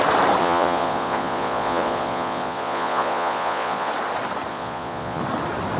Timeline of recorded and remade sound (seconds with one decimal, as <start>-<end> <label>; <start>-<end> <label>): 0.0-0.4 recorded; 0.4-3.9 remade; 3.9-4.5 recorded; 4.5-5.2 remade; 5.2-5.8 recorded

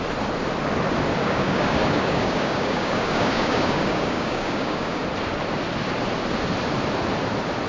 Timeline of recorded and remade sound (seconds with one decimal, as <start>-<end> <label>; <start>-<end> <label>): 0.0-1.2 recorded; 1.2-5.0 remade; 5.0-7.7 recorded

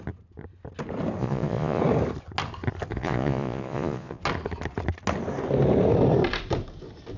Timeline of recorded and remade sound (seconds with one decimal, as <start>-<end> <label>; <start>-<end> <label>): 0.0-1.2 recorded; 1.2-1.8 remade; 1.8-2.9 recorded; 2.9-4.2 remade; 4.2-7.2 recorded

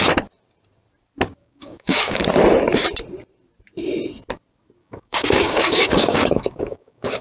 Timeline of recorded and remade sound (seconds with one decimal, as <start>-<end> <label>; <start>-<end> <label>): 0.0-1.4 recorded; 1.4-2.2 remade; 2.2-4.8 recorded; 4.8-7.2 remade

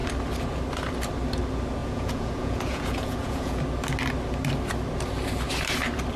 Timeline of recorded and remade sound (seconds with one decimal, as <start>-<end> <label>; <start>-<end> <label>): 0.0-1.8 recorded; 1.8-3.6 remade; 3.6-6.2 recorded